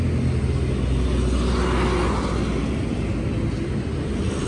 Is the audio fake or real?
real